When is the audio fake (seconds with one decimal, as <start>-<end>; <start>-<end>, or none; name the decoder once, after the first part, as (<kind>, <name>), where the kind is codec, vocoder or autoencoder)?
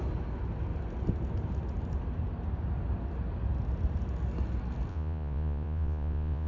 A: 4.9-6.5 (vocoder, Vocos)